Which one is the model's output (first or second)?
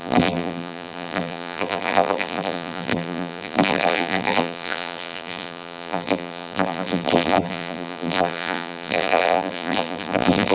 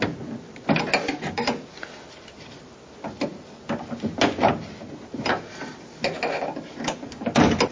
first